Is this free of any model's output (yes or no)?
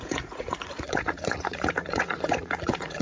no